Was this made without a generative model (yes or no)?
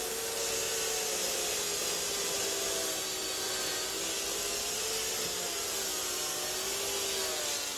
yes